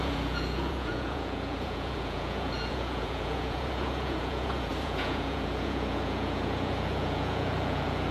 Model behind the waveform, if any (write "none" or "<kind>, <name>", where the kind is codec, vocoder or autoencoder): vocoder, Vocos